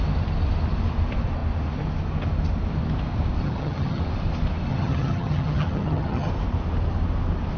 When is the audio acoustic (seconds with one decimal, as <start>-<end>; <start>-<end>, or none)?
0.0-3.4; 4.0-4.7; 6.3-7.6